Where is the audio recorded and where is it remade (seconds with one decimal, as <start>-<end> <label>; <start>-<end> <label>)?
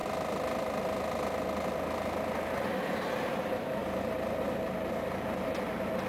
0.0-6.1 recorded